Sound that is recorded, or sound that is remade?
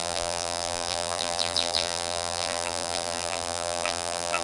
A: remade